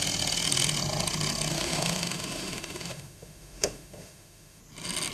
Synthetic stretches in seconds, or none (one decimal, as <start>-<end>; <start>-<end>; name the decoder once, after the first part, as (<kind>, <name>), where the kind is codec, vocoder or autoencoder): 1.5-4.6 (autoencoder, DAC-VAE)